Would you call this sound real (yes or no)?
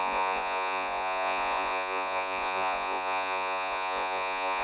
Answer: no